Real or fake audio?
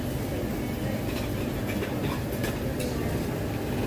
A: real